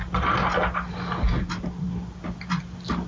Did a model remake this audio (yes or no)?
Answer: no